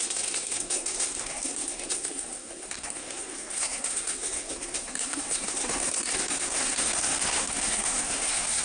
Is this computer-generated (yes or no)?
yes